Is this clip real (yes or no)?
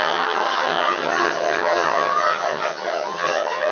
no